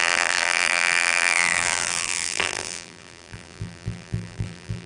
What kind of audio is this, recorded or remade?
remade